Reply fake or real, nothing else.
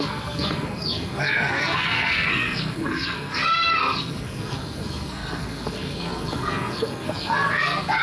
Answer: fake